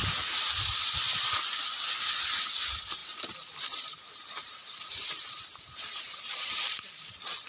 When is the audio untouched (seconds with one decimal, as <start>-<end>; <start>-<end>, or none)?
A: 0.0-3.0; 6.9-7.5